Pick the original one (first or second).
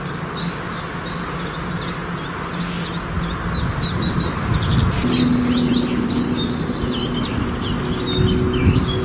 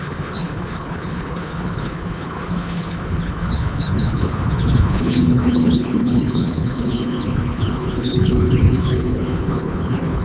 first